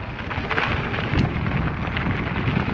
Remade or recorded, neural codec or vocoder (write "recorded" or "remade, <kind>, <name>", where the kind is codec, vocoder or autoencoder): recorded